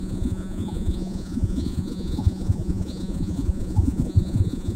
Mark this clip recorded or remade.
remade